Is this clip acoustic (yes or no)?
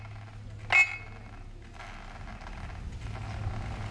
yes